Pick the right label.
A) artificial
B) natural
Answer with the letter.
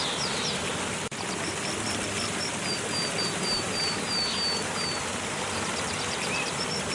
B